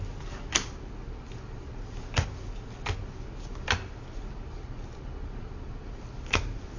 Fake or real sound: real